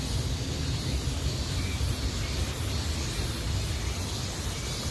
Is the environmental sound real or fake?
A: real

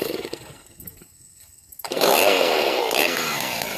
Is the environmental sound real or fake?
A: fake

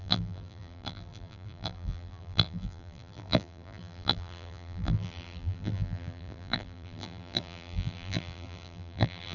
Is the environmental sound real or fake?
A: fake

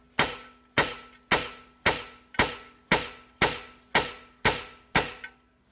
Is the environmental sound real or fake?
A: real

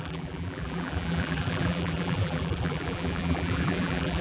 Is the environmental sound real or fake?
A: fake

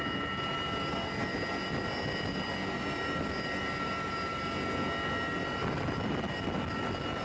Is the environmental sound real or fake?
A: real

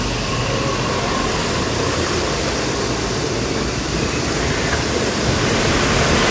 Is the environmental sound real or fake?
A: fake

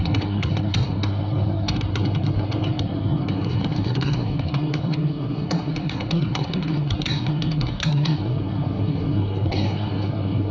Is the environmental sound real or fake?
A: fake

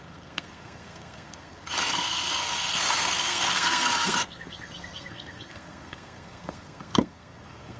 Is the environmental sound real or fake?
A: fake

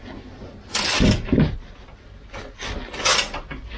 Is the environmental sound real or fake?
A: real